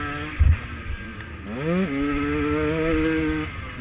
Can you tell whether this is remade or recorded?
recorded